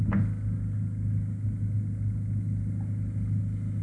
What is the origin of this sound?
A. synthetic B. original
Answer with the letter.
B